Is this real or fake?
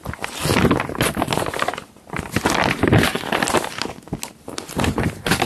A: real